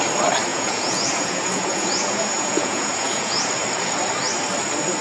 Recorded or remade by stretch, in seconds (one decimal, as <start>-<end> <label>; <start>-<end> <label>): 0.0-0.5 recorded; 0.5-3.5 remade; 3.5-5.0 recorded